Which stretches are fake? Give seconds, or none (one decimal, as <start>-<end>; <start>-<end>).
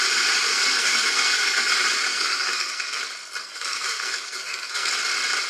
0.5-1.7; 2.1-3.0; 3.4-4.9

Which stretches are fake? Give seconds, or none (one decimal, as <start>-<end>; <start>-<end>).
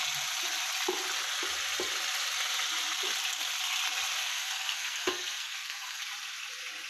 4.2-6.0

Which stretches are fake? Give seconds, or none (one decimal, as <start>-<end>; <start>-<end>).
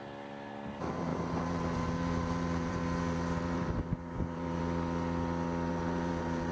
1.1-4.6; 5.7-6.5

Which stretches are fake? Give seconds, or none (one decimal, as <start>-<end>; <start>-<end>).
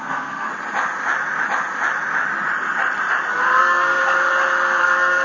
0.0-0.5; 3.6-4.0; 4.8-5.2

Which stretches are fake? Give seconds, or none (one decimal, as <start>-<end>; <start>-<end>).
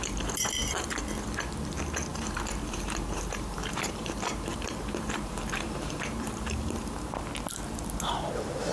2.1-7.2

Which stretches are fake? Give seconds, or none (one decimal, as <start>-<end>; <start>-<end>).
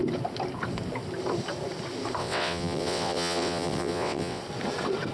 2.2-4.4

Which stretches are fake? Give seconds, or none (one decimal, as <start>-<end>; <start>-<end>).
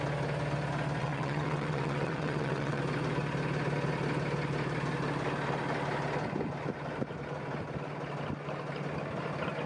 1.0-2.8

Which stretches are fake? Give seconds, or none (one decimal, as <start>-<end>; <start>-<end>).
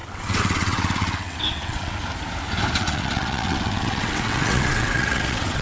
0.0-2.0; 2.8-5.6